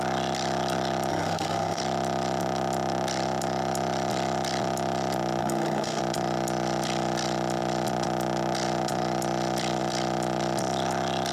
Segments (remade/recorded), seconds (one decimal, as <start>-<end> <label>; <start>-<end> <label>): 0.0-1.1 recorded; 1.1-1.8 remade; 1.8-5.4 recorded; 5.4-6.0 remade; 6.0-11.3 recorded